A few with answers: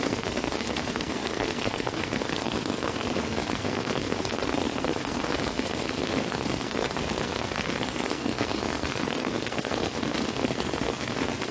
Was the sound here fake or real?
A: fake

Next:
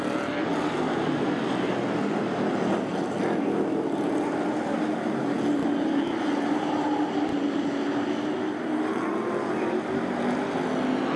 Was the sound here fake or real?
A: real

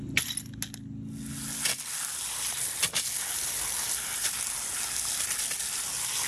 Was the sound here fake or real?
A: real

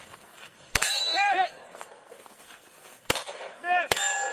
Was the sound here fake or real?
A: fake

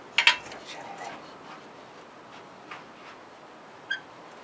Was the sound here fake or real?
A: real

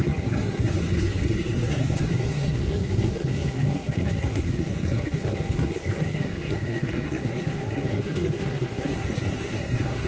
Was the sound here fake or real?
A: fake